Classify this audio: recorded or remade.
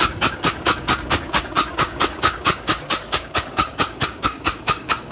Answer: remade